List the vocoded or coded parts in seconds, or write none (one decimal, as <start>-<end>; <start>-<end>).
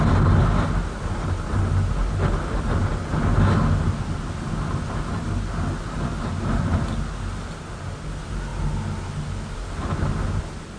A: none